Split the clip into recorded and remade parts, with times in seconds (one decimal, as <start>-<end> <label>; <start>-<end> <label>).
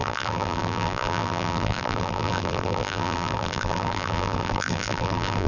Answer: 0.0-5.5 remade